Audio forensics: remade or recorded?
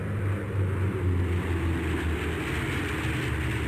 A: recorded